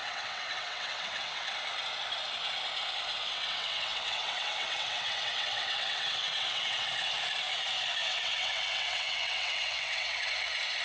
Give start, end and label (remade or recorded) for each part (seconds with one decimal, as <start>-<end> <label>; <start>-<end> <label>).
0.0-1.5 remade; 1.5-3.2 recorded; 3.2-6.9 remade; 6.9-8.0 recorded; 8.0-10.2 remade; 10.2-10.8 recorded

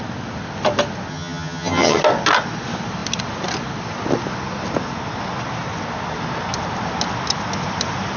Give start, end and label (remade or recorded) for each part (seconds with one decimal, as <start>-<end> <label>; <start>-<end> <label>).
0.0-1.1 recorded; 1.1-2.0 remade; 2.0-8.2 recorded

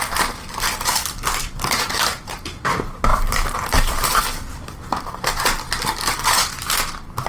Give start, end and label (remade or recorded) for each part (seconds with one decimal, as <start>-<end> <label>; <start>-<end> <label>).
0.0-1.4 recorded; 1.4-2.4 remade; 2.4-3.1 recorded; 3.1-4.2 remade; 4.2-7.3 recorded

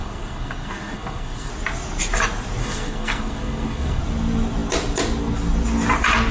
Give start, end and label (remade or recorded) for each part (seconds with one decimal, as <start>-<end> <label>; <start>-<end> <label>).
0.0-1.5 remade; 1.5-2.6 recorded; 2.6-4.0 remade; 4.0-6.3 recorded

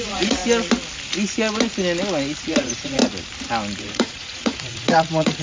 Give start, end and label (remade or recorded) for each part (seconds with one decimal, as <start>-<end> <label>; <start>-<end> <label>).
0.0-0.4 remade; 0.4-2.5 recorded; 2.5-3.0 remade; 3.0-3.8 recorded; 3.8-5.4 remade

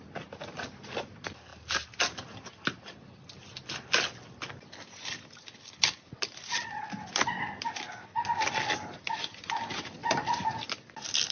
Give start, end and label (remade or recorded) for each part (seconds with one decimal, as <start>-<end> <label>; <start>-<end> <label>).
0.0-10.0 recorded; 10.0-11.3 remade